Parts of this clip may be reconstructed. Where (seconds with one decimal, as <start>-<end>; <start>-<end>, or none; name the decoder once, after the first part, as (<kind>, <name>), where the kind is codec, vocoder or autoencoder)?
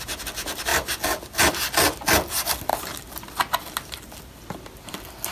none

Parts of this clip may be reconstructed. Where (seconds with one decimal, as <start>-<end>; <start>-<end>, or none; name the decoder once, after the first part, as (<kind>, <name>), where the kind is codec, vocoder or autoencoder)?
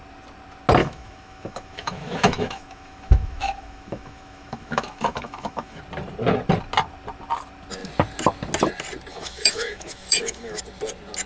0.8-5.8 (autoencoder, DAC-VAE); 9.1-10.6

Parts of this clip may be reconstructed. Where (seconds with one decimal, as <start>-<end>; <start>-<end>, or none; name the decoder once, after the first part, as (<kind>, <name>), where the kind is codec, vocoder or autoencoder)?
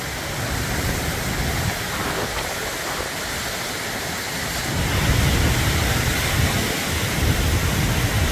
none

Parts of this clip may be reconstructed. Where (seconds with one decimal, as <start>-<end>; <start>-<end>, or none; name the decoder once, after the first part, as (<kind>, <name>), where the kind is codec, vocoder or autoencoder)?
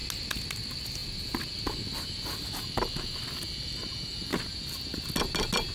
none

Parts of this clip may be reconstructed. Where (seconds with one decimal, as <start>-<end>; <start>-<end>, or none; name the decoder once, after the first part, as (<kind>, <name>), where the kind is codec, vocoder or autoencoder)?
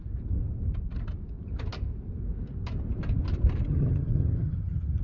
3.7-5.0 (vocoder, HiFi-GAN)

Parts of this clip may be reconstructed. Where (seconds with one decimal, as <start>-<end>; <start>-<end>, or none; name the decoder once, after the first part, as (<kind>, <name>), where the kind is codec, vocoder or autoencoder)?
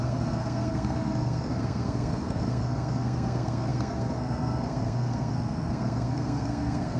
0.0-7.0 (codec, SNAC)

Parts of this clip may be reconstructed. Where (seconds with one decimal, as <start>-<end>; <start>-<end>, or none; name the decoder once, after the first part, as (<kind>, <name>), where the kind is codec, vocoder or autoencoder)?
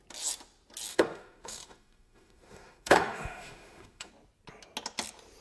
0.9-4.1 (autoencoder, DAC-VAE)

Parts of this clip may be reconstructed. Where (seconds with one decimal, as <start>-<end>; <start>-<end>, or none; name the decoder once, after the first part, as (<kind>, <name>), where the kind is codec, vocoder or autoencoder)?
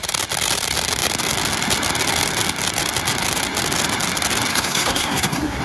4.5-5.6 (codec, SNAC)